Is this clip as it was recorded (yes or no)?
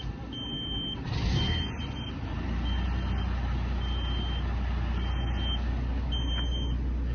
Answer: yes